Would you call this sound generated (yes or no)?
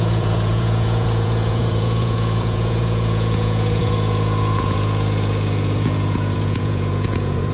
yes